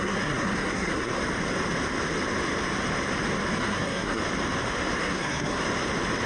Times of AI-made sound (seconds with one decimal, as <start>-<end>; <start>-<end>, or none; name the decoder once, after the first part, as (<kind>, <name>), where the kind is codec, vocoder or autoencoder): 0.0-1.2 (codec, SNAC); 3.6-4.2; 5.0-5.6